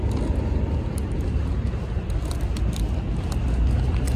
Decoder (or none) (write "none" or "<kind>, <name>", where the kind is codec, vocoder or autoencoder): none